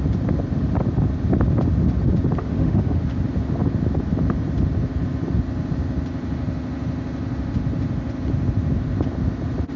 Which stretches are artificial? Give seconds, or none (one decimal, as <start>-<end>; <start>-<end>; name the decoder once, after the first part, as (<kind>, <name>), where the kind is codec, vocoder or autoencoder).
2.4-3.0 (autoencoder, DAC-VAE)